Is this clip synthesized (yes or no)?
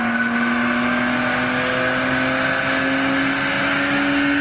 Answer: no